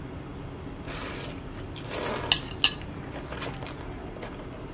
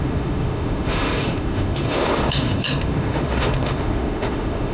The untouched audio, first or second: first